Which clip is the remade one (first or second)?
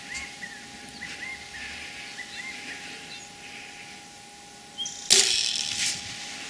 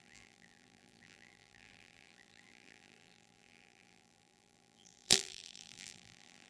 second